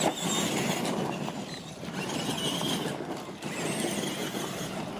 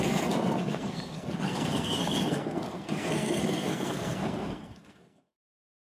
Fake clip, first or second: second